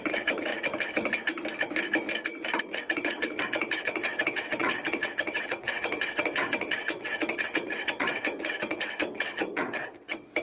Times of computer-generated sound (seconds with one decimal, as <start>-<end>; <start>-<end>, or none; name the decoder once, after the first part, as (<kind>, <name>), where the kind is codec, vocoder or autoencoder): 0.0-0.5 (vocoder, WaveNeXt); 2.6-10.4